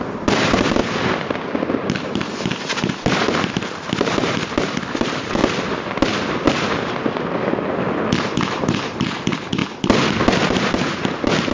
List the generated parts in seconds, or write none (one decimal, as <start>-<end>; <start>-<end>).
0.0-0.8; 1.7-5.4; 8.2-9.6; 10.5-11.5